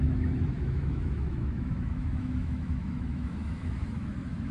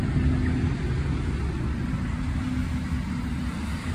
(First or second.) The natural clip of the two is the second